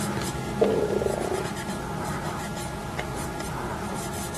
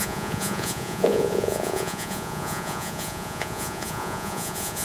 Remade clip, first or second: second